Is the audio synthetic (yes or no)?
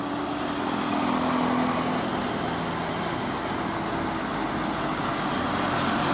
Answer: no